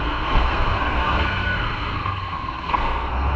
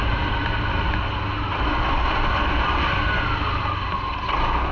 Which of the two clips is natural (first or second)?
second